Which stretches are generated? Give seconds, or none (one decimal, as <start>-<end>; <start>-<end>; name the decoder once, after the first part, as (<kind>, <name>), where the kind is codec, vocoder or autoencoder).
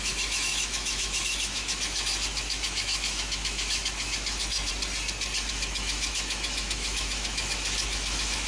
0.0-4.7 (autoencoder, DAC-VAE); 5.5-8.5